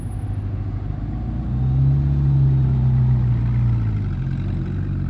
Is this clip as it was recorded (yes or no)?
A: yes